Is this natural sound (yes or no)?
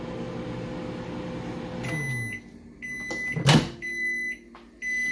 yes